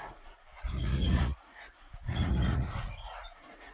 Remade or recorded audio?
remade